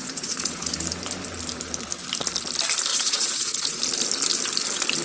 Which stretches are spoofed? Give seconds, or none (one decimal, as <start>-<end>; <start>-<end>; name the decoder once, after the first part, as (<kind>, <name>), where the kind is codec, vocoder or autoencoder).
0.0-0.7 (vocoder, Vocos); 2.9-3.8